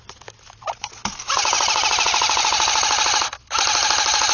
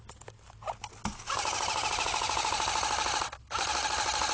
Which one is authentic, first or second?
second